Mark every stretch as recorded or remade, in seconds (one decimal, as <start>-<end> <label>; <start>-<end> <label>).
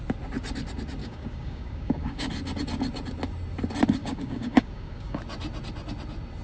0.0-1.0 recorded; 1.0-2.3 remade; 2.3-4.0 recorded; 4.0-5.2 remade; 5.2-6.4 recorded